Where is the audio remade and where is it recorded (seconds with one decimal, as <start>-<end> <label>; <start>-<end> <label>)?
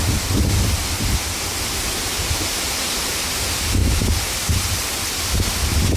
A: 0.0-6.0 recorded